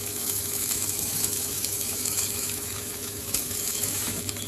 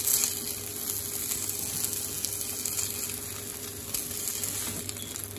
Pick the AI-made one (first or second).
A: first